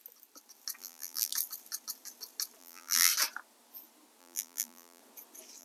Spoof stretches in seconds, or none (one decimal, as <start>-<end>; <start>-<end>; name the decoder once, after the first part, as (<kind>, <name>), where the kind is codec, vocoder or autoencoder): 0.8-1.3 (vocoder, BigVGAN v2); 2.6-3.1; 4.2-5.0